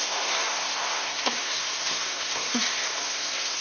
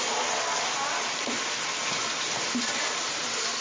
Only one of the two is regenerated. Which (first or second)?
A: first